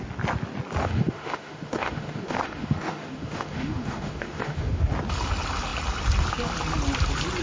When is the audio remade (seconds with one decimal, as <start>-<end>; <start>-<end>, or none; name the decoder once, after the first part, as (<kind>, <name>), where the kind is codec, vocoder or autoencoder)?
0.8-4.8 (autoencoder, DAC-VAE)